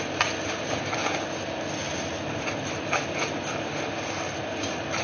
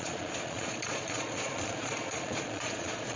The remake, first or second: second